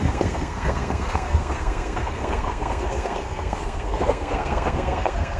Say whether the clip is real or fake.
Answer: fake